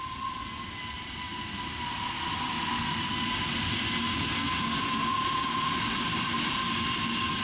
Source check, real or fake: real